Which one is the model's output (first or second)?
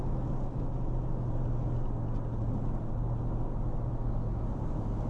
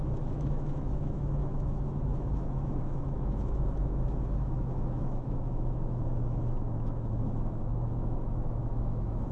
second